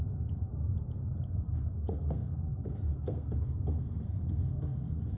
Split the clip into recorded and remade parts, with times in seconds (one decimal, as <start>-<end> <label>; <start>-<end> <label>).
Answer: 0.0-0.5 remade; 0.5-1.2 recorded; 1.2-5.2 remade